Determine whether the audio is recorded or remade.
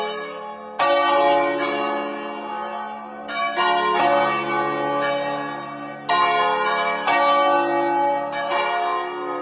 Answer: recorded